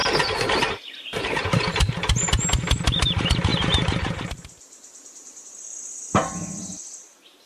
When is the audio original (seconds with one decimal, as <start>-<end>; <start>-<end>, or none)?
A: 1.8-3.5; 6.3-7.5